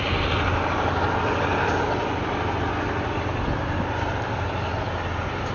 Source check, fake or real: real